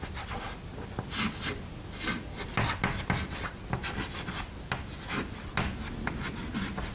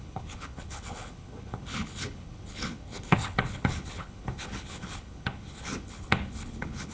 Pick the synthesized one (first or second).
second